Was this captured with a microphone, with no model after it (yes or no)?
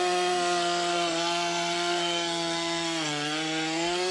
no